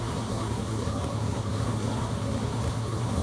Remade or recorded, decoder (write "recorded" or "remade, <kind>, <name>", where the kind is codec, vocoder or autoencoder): remade, codec, SNAC